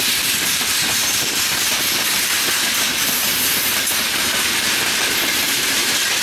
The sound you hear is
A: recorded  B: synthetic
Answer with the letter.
B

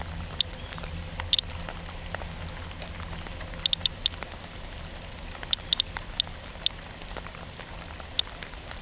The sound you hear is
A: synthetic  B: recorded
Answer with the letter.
B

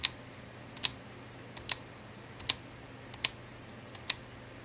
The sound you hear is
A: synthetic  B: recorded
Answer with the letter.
B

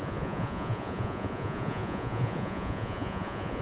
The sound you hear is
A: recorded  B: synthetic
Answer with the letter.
B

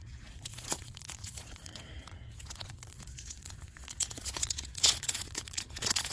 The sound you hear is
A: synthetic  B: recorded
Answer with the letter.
A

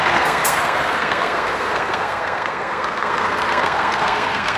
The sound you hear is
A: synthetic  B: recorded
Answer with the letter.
A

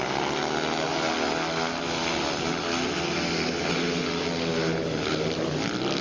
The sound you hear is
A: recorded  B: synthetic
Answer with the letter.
A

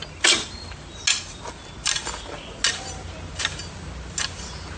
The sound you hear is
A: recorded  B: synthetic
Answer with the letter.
A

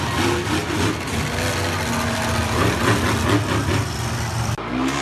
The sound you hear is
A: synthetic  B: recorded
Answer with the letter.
B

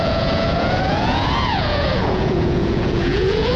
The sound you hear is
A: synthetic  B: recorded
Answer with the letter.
A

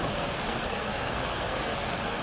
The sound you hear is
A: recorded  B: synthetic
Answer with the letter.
B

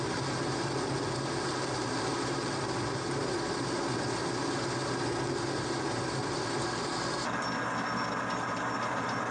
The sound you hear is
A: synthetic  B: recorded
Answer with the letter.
B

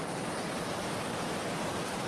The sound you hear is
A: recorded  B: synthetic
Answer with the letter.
A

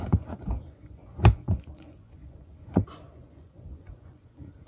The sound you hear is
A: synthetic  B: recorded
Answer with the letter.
A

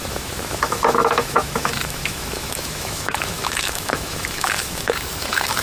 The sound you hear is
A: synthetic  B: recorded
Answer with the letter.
A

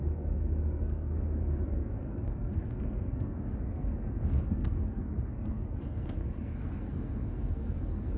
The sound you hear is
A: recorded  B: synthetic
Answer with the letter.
B